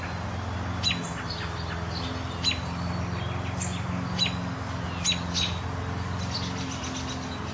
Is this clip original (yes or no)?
yes